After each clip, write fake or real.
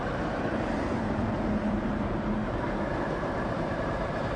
fake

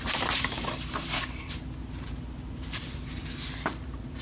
fake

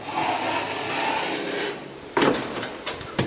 real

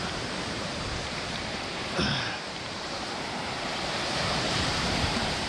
fake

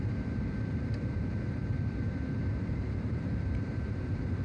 fake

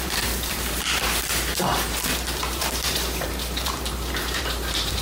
fake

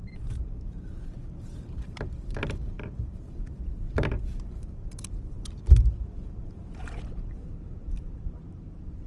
fake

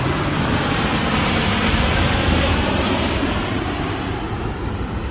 fake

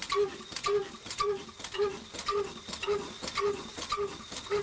real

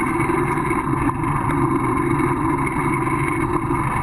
real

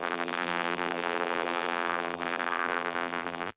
fake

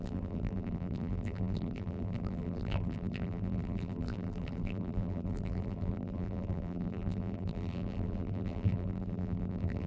fake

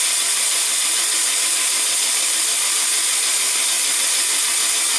real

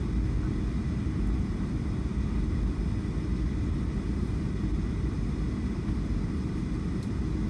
real